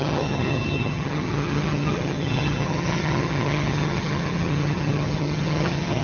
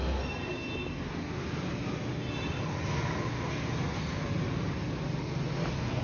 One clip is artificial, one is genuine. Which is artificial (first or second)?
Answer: first